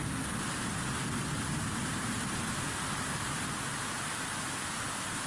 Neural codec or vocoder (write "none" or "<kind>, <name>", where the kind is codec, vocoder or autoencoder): none